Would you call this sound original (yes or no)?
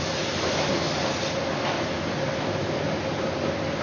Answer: yes